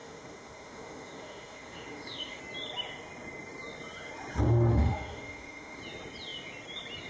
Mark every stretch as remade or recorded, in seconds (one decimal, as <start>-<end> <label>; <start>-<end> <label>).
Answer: 0.0-2.4 remade; 2.4-4.7 recorded; 4.7-5.8 remade; 5.8-7.1 recorded